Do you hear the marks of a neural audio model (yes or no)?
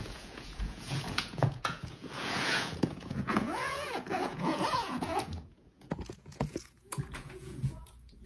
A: yes